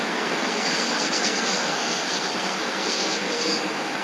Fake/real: fake